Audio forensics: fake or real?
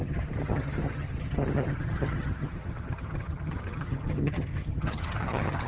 fake